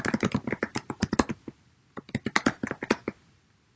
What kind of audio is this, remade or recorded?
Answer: recorded